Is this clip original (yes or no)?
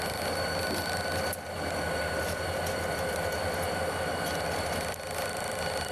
yes